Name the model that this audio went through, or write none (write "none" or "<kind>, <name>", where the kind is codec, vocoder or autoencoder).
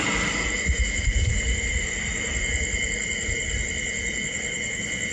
none